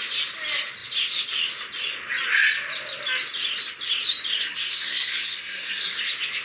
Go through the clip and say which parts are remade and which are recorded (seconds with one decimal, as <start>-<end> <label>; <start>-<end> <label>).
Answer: 0.0-4.4 recorded; 4.4-6.0 remade; 6.0-6.4 recorded